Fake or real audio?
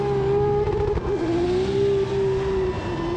real